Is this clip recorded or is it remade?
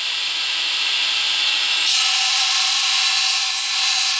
recorded